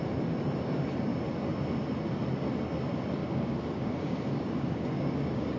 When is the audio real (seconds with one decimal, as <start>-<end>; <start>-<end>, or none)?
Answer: 0.0-3.2